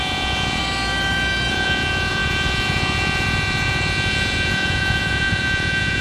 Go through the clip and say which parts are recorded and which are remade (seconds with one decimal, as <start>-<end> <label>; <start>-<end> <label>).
0.0-0.6 remade; 0.6-1.5 recorded; 1.5-6.0 remade